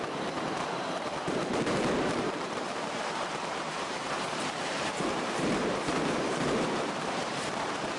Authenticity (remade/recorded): remade